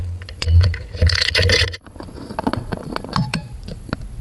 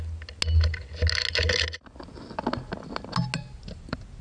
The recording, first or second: second